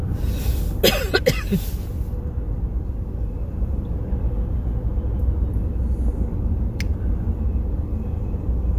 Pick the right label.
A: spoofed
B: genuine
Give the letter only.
B